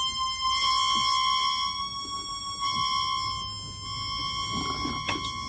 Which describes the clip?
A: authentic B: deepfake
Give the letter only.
A